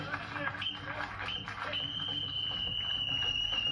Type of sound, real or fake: real